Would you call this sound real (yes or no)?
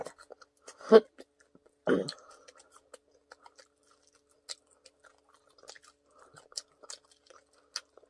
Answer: yes